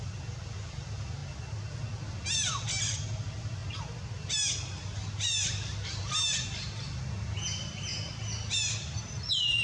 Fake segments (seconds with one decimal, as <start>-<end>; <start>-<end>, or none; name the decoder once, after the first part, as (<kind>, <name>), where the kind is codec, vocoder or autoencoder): none